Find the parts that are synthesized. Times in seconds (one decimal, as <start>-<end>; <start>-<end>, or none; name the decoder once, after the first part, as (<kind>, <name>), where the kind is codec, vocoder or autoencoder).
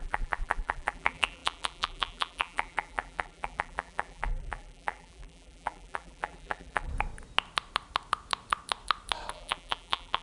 0.0-6.9 (vocoder, BigVGAN v2); 9.3-10.2